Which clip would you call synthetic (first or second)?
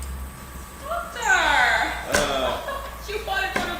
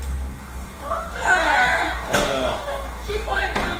second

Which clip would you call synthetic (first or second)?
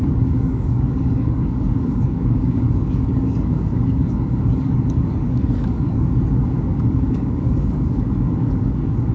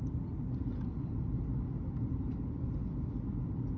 first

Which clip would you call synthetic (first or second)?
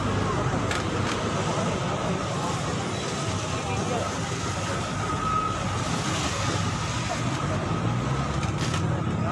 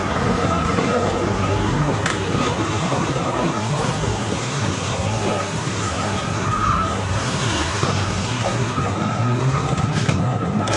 second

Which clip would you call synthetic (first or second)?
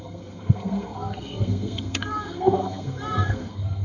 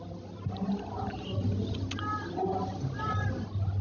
first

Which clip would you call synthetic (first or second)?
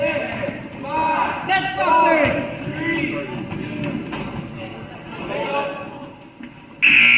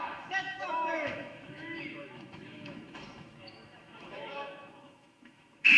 second